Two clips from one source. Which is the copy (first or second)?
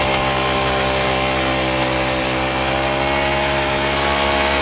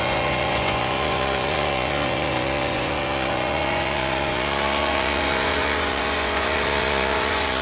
second